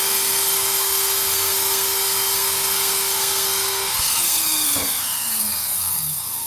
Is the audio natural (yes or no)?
no